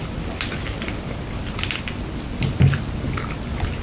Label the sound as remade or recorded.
recorded